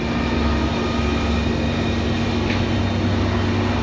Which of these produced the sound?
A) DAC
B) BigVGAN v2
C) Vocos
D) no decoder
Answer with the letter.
D